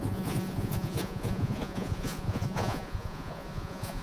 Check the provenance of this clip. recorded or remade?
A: remade